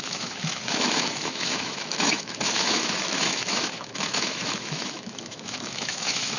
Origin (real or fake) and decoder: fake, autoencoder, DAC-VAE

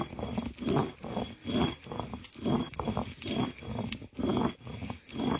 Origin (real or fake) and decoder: real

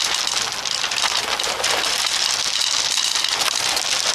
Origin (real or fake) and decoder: real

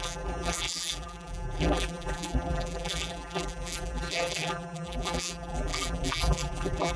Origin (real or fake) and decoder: fake, vocoder, BigVGAN v2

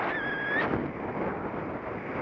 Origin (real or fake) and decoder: real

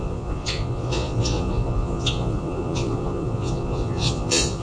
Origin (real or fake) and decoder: fake, vocoder, Vocos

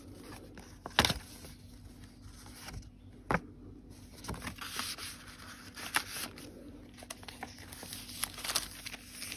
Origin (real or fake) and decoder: real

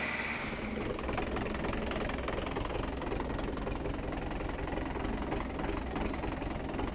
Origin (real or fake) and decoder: real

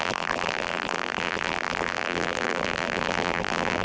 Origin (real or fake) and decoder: fake, vocoder, BigVGAN v2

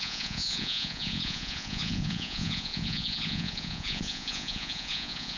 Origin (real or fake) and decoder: fake, vocoder, Vocos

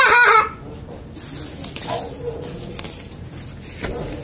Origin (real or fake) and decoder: real